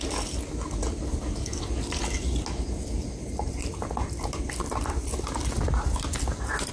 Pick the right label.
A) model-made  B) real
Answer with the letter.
B